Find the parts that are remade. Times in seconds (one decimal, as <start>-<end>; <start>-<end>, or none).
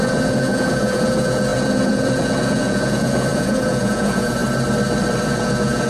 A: 0.0-4.4; 5.2-5.9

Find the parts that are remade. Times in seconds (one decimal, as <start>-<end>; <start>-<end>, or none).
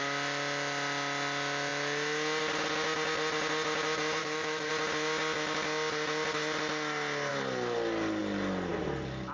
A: 4.2-4.7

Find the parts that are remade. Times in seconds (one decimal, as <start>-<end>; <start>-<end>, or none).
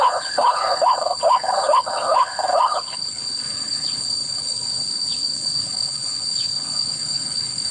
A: 0.0-7.7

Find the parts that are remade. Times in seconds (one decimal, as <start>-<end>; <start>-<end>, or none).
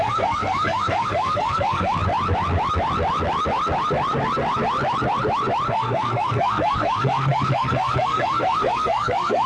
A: 0.0-2.0; 5.7-9.5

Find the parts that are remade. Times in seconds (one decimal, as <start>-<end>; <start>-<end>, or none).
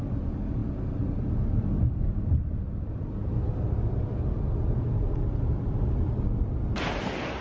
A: none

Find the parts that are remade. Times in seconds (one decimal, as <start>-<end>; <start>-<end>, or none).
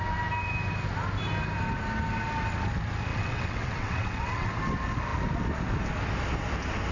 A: 3.1-4.5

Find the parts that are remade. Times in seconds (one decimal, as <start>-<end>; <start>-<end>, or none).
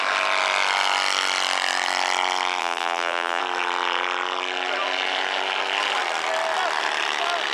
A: 2.6-3.4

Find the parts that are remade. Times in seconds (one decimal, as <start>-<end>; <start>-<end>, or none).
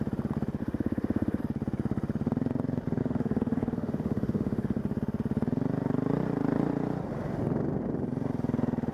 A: 0.6-1.4; 3.0-4.8